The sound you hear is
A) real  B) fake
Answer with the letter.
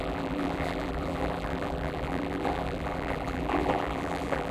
B